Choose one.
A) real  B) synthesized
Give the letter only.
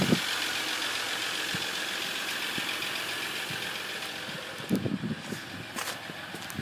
A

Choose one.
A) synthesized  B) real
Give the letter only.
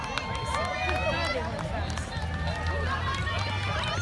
B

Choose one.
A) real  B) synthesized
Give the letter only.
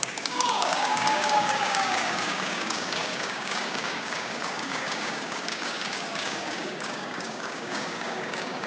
B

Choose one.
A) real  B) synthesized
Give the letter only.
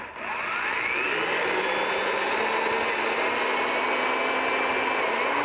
A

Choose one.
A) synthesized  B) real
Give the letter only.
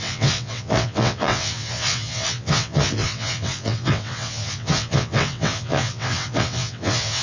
A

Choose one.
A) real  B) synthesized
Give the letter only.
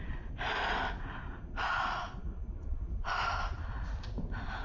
A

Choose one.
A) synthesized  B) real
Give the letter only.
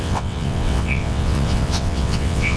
A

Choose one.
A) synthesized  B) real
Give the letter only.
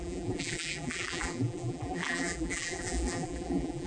A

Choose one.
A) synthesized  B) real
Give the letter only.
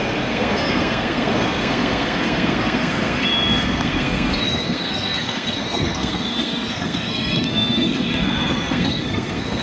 A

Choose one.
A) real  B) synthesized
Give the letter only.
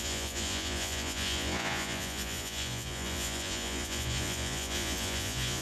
B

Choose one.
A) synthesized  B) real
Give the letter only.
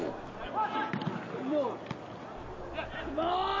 B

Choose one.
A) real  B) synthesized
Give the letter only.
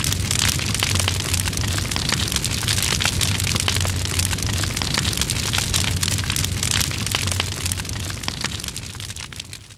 A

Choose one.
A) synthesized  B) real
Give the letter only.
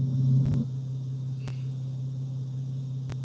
B